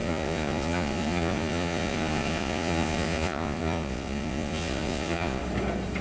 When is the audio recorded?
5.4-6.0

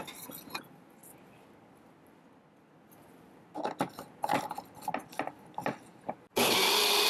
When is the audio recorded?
0.0-7.1

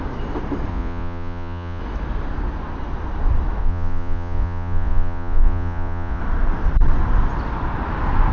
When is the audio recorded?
0.0-0.7; 1.8-3.6; 6.2-8.3